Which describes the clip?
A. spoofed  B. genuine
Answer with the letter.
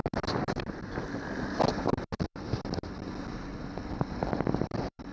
B